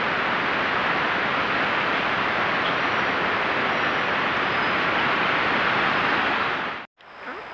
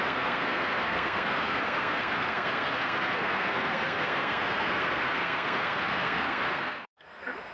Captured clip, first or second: first